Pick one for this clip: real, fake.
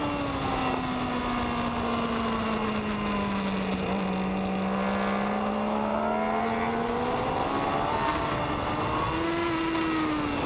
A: real